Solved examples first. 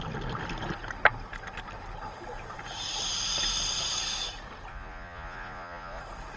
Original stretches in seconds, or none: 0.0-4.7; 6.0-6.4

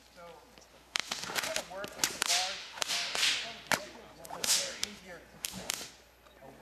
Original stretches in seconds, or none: 0.0-0.7; 1.6-2.6; 3.2-4.4; 5.0-5.4; 5.9-6.6

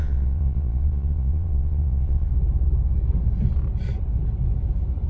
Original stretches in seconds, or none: 2.3-5.1

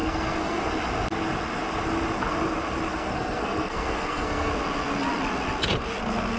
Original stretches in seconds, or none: 0.7-2.9; 4.5-6.4